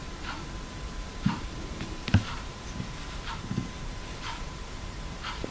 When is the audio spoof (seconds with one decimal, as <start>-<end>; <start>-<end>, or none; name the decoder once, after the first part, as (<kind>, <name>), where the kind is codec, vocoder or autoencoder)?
0.0-5.5 (vocoder, BigVGAN v2)